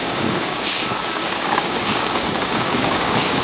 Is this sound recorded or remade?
remade